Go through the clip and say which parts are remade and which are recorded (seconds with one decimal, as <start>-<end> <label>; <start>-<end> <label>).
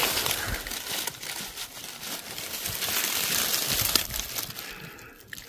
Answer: 0.0-5.5 recorded